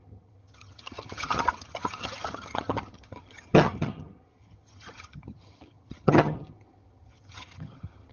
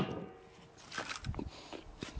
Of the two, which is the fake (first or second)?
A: first